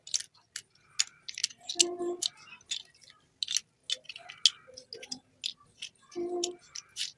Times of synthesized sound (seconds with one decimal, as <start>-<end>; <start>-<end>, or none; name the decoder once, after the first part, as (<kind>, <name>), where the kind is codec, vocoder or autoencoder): none